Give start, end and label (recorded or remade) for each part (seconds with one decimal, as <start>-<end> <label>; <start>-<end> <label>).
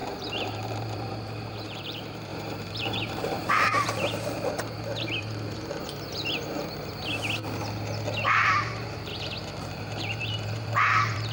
0.0-5.8 remade; 5.8-8.3 recorded; 8.3-9.1 remade; 9.1-9.7 recorded; 9.7-11.3 remade